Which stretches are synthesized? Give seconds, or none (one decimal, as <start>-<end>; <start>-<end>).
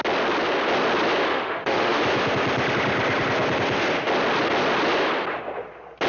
1.3-2.0